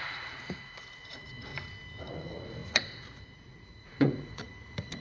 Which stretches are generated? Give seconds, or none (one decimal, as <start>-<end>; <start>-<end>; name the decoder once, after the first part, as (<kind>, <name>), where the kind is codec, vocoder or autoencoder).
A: 0.0-1.5 (vocoder, Vocos); 2.0-5.0